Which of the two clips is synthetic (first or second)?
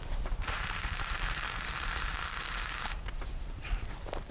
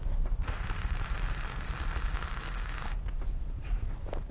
first